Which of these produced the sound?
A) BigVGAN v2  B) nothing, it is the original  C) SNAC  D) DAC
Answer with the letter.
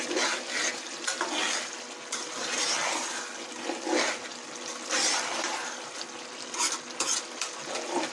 B